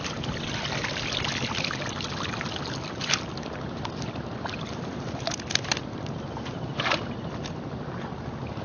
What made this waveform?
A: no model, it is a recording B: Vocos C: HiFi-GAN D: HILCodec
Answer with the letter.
A